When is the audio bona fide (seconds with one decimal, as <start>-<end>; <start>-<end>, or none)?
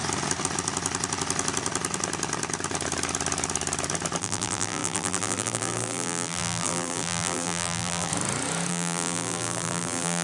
0.0-4.2; 8.1-8.7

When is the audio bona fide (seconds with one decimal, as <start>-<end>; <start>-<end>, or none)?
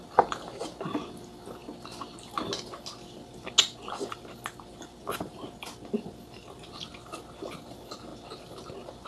0.0-9.1